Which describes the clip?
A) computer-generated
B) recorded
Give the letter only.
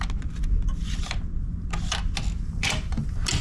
B